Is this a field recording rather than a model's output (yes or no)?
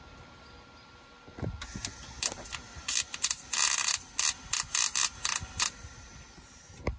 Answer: yes